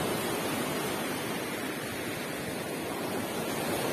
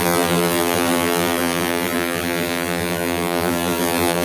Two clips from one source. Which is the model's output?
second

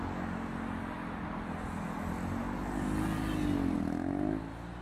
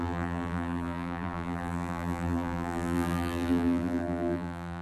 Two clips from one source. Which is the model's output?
second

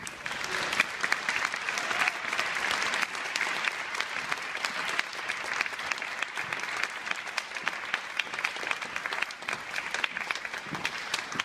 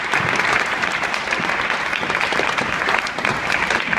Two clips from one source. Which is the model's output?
second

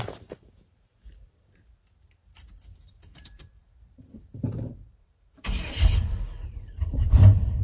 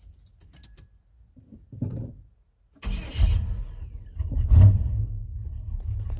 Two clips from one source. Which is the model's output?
first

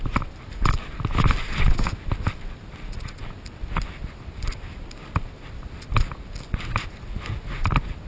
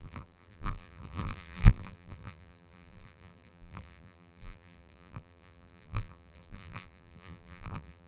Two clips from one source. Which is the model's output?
second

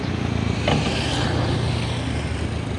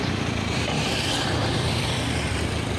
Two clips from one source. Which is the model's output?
second